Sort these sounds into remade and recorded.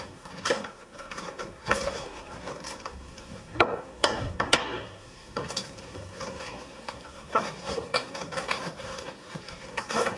remade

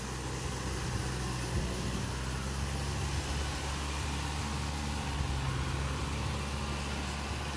recorded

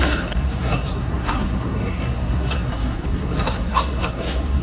remade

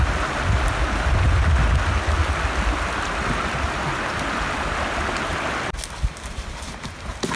recorded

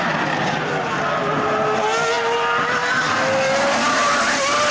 recorded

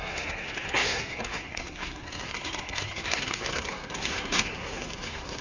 remade